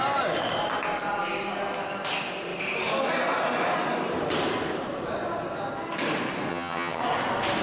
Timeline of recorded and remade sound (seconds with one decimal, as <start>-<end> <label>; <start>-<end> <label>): 0.0-6.5 recorded; 6.5-7.0 remade; 7.0-7.6 recorded